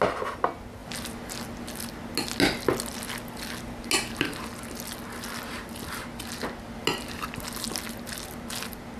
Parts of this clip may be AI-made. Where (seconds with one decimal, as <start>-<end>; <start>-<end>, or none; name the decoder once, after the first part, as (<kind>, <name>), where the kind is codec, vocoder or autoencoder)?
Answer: none